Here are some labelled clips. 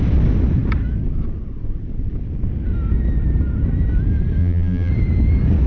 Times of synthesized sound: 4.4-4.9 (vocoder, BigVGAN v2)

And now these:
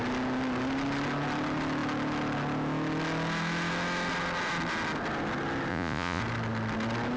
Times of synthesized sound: 5.7-6.2 (vocoder, Vocos)

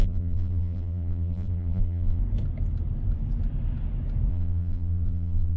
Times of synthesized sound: 0.0-2.2 (vocoder, BigVGAN v2); 4.3-5.6

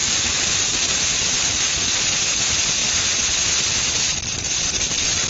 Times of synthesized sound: 0.0-1.4 (vocoder, BigVGAN v2)

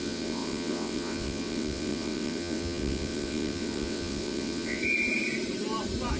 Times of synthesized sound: 0.0-4.8 (vocoder, WaveNeXt)

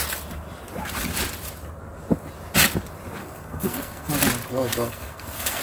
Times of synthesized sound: 3.2-4.1 (codec, SNAC); 4.5-5.6

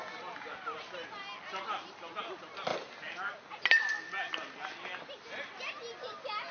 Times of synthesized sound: none